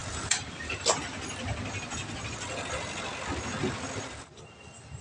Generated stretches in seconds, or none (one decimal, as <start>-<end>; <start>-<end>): none